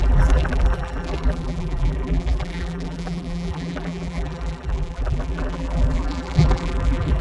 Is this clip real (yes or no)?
no